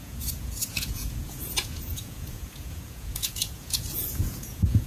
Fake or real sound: fake